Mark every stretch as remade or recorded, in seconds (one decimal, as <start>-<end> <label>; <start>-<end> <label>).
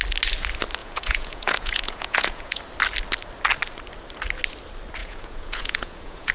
0.0-0.8 recorded; 0.8-2.6 remade; 2.6-5.0 recorded; 5.0-6.3 remade